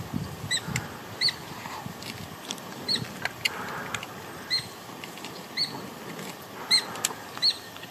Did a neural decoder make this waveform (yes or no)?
no